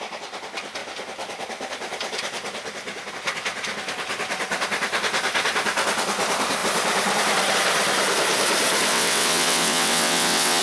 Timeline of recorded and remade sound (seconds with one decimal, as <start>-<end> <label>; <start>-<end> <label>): 0.0-8.9 recorded; 8.9-10.6 remade